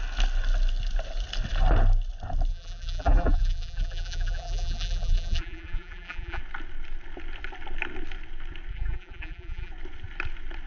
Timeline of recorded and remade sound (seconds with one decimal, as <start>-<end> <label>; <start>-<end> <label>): 0.0-2.5 recorded; 2.5-6.4 remade; 6.4-8.7 recorded; 8.7-9.7 remade; 9.7-10.7 recorded